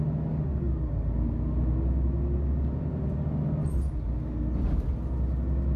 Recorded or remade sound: recorded